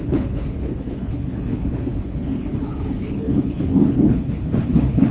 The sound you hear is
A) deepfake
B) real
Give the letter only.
A